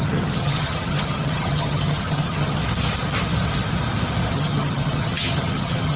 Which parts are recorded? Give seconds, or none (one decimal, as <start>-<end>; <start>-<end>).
2.6-4.3